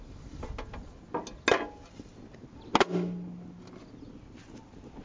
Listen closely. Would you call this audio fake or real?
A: real